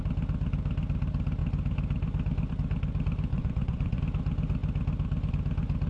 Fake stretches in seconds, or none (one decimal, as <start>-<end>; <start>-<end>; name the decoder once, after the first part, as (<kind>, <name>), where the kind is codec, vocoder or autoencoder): 3.3-4.0 (vocoder, Vocos)